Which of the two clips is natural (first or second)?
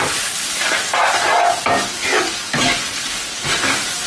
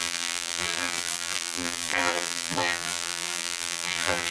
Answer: first